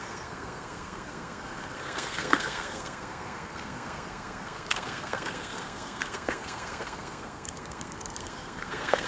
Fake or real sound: fake